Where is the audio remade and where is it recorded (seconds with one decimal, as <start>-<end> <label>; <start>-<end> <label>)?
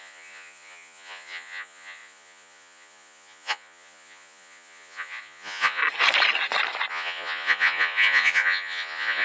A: 0.0-5.8 remade; 5.8-6.9 recorded; 6.9-9.2 remade